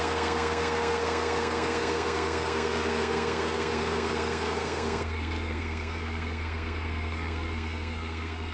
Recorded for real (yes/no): no